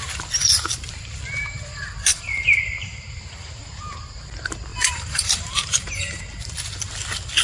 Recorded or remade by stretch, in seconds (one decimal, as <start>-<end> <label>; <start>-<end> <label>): 0.0-2.1 recorded; 2.1-3.6 remade; 3.6-4.7 recorded; 4.7-6.2 remade; 6.2-7.4 recorded